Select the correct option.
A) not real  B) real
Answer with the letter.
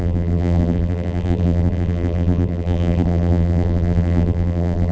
A